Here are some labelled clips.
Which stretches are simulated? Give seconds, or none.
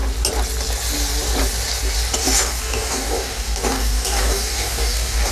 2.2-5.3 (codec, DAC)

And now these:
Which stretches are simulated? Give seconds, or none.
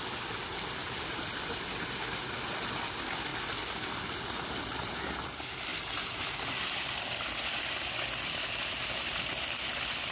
0.8-1.4 (vocoder, BigVGAN v2)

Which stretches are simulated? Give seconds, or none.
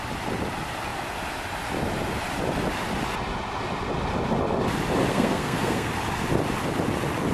5.1-5.9 (codec, SNAC)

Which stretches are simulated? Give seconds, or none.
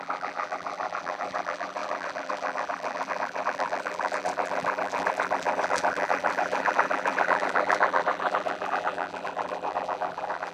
0.0-10.5 (vocoder, BigVGAN v2)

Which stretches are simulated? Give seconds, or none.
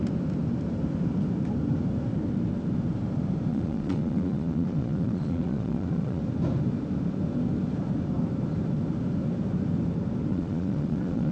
3.5-6.2 (vocoder, Vocos); 10.3-11.3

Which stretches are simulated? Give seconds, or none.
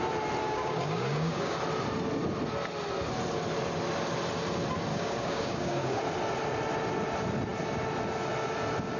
0.4-1.6 (codec, DAC); 4.9-6.0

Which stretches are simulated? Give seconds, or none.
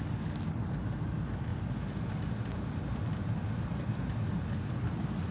none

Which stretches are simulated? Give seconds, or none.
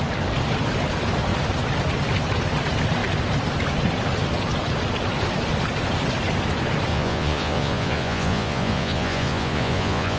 6.9-10.2 (vocoder, Vocos)